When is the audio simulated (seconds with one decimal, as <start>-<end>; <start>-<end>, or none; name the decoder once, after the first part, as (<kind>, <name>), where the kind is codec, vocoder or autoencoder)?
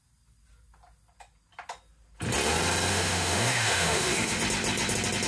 2.9-4.4 (autoencoder, DAC-VAE)